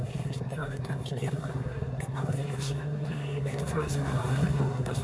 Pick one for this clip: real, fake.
fake